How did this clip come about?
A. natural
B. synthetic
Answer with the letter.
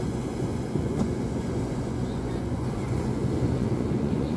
B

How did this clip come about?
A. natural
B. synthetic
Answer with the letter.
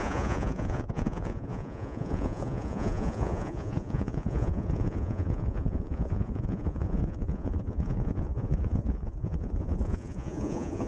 B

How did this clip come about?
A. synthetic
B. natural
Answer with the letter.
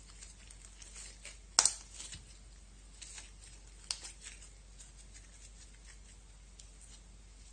B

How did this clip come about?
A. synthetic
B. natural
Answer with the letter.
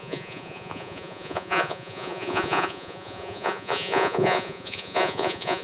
A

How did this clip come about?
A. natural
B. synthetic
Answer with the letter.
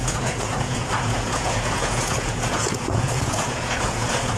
B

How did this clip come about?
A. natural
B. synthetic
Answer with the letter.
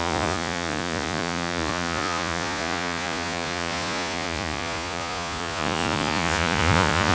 B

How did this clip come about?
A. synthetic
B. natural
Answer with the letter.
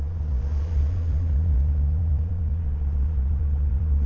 A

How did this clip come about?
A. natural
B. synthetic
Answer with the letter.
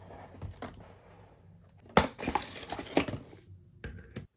A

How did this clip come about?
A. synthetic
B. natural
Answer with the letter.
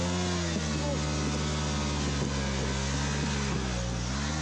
B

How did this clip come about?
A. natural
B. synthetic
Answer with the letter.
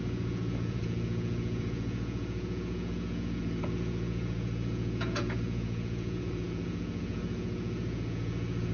B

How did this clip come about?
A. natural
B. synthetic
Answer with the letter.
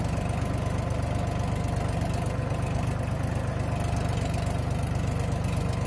A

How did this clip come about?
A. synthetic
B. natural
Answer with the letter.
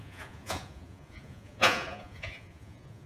A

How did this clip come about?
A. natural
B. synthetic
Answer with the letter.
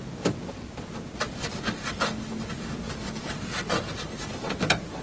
A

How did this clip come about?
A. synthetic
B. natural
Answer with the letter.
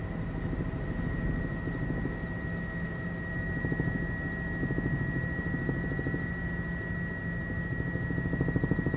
B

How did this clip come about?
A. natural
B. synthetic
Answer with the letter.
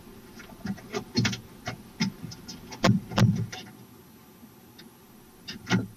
A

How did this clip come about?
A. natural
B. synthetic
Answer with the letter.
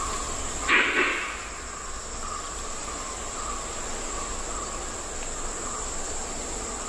A